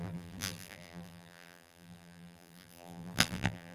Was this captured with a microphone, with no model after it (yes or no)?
no